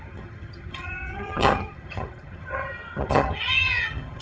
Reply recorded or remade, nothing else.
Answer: remade